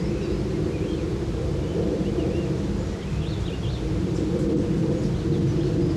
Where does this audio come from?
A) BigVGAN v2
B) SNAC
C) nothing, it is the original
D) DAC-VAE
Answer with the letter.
C